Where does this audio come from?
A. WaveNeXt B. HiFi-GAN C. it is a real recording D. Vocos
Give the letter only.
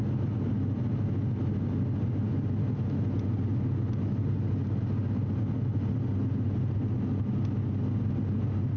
C